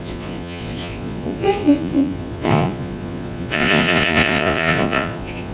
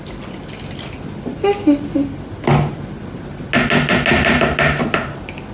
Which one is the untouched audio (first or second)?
second